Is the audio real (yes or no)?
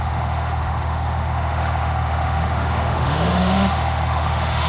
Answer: no